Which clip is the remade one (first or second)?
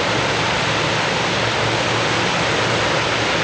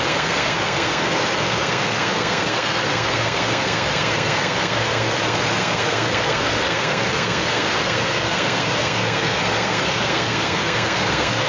second